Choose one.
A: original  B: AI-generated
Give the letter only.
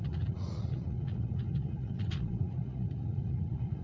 B